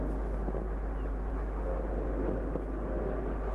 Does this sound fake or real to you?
real